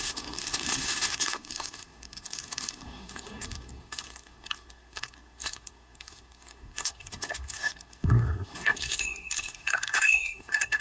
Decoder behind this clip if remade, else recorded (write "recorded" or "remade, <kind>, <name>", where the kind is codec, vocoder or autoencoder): remade, codec, SNAC